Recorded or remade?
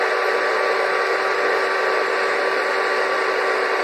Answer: recorded